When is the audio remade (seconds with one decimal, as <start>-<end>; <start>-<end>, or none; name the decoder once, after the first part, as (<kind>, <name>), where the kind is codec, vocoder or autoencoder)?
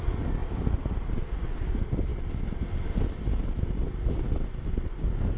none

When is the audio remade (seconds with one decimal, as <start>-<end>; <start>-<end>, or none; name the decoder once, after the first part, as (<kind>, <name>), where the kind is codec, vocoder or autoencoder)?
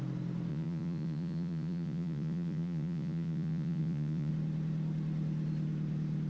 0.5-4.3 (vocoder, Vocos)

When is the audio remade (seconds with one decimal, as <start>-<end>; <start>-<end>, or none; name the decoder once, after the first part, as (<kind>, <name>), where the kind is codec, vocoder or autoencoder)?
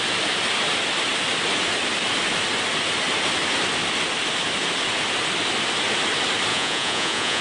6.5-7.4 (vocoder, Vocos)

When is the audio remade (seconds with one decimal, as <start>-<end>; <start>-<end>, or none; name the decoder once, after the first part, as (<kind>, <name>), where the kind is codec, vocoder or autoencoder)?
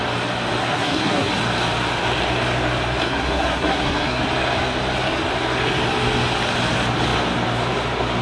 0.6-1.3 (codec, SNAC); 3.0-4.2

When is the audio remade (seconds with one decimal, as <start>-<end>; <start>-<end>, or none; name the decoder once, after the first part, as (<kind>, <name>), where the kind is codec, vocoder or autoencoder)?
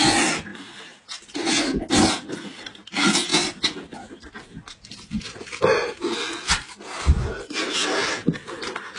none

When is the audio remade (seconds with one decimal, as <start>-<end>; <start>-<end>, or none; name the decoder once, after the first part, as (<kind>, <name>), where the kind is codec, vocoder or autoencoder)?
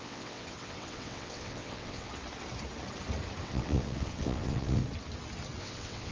0.0-2.1 (vocoder, WaveNeXt); 3.4-4.8; 5.6-6.1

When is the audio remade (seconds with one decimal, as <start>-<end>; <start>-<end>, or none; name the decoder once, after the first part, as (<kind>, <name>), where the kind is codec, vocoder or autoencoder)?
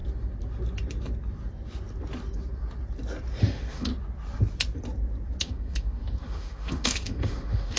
3.4-3.9 (autoencoder, DAC-VAE); 5.4-7.8